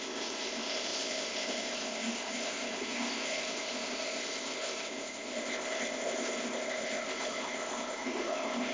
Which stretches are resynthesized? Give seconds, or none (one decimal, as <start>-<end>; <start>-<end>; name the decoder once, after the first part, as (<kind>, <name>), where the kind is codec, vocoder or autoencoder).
0.0-8.7 (codec, ZipCodec)